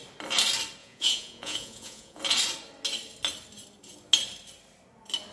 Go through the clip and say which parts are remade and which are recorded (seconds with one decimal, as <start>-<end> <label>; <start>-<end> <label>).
0.0-0.8 recorded; 0.8-2.2 remade; 2.2-5.3 recorded

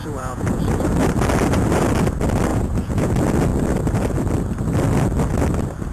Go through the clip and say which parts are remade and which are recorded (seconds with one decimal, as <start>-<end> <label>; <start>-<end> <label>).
0.0-0.6 remade; 0.6-2.5 recorded; 2.5-3.1 remade; 3.1-5.9 recorded

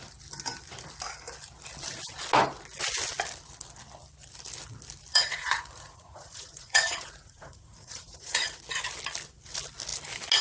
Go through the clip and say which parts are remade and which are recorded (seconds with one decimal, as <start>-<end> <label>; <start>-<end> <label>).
0.0-5.1 recorded; 5.1-8.6 remade; 8.6-10.4 recorded